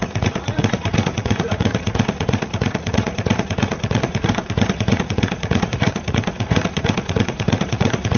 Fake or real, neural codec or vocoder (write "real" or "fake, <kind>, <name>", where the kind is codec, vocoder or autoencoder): fake, vocoder, Vocos